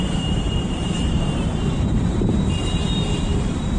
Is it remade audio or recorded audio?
remade